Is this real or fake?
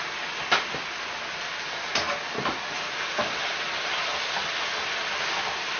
real